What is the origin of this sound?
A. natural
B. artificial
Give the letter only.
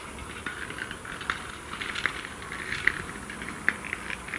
A